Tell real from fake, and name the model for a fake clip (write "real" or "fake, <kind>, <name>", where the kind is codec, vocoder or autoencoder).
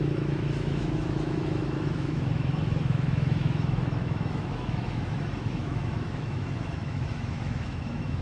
fake, autoencoder, DAC-VAE